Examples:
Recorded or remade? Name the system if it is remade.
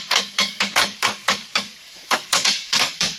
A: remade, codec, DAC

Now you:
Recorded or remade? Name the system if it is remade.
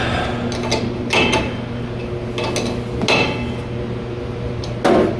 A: recorded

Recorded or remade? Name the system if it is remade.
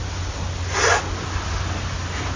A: recorded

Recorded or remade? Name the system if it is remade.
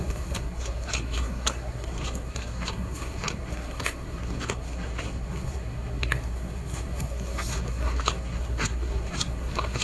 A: remade, codec, SNAC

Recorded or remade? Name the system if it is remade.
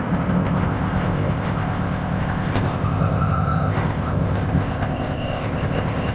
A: remade, codec, ZipCodec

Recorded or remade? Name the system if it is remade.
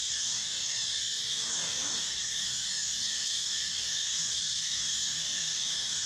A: remade, codec, DAC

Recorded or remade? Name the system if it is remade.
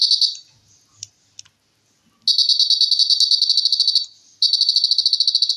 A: recorded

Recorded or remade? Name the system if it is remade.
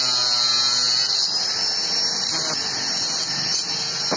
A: recorded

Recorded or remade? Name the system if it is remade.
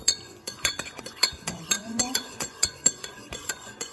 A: remade, vocoder, Vocos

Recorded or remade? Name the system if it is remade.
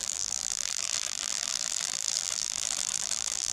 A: remade, vocoder, BigVGAN v2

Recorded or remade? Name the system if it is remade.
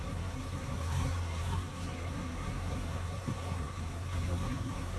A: remade, codec, SNAC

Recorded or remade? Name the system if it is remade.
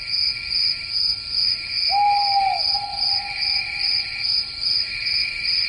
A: recorded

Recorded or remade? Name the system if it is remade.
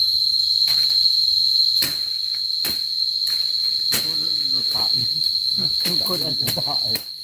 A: recorded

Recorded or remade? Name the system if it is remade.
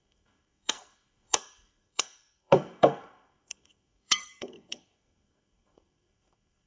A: remade, codec, SNAC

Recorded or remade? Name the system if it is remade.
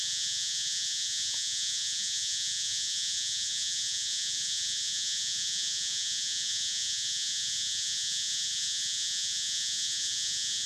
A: remade, vocoder, Vocos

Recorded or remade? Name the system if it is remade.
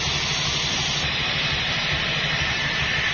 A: recorded